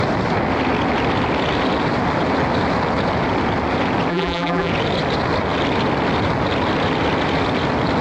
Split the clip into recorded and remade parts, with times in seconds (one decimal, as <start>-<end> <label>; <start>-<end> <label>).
0.0-4.1 recorded; 4.1-4.7 remade; 4.7-8.0 recorded